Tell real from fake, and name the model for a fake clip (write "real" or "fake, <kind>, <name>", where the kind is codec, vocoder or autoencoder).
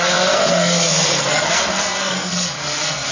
fake, codec, SNAC